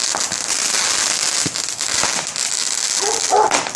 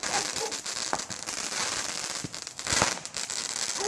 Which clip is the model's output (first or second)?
second